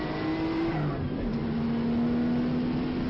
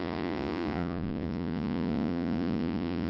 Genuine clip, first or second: first